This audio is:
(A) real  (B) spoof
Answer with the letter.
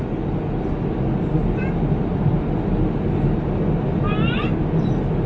A